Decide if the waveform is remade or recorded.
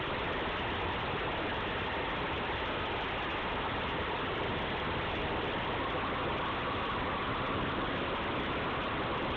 recorded